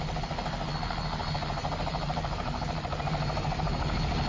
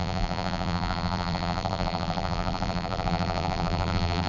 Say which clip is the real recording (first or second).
first